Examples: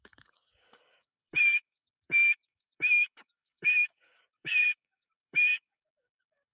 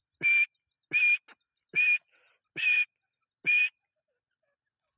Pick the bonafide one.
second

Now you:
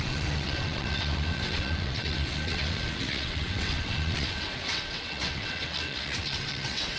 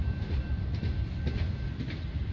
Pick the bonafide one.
second